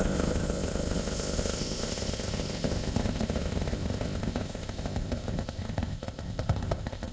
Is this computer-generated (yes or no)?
yes